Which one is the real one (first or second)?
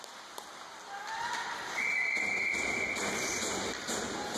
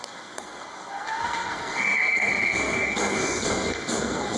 first